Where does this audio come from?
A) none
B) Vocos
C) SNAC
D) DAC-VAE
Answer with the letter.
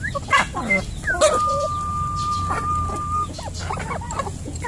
A